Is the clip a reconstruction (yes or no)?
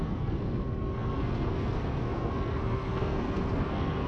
yes